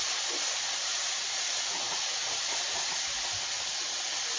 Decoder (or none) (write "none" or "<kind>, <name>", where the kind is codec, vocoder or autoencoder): none